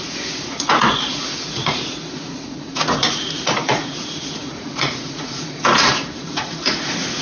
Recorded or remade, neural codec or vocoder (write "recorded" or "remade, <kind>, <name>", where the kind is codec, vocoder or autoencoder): remade, vocoder, Vocos